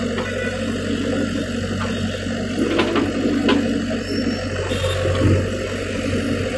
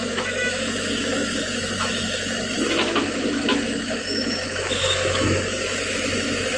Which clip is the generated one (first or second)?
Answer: second